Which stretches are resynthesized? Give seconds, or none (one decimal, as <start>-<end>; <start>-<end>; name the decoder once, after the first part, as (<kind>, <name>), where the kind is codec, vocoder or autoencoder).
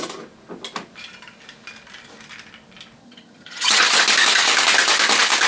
3.0-4.0 (vocoder, HiFi-GAN)